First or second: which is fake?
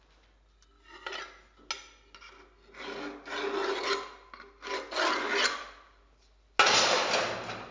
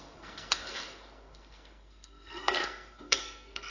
second